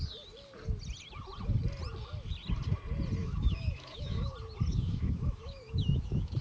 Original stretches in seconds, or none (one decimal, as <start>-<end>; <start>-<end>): 0.0-3.2; 4.3-4.7